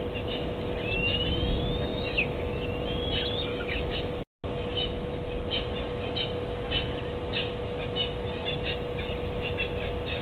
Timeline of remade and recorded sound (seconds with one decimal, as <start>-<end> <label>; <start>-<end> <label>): 0.0-1.9 recorded; 1.9-2.7 remade; 2.7-3.5 recorded; 3.5-4.1 remade; 4.1-4.7 recorded; 4.7-5.3 remade; 5.3-10.2 recorded